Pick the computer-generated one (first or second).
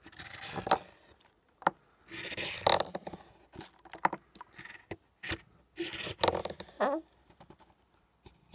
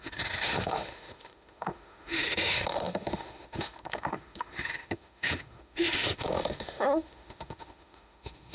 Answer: second